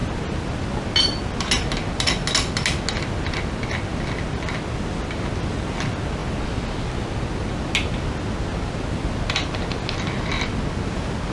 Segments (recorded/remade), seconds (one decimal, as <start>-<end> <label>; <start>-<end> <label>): 0.0-11.3 recorded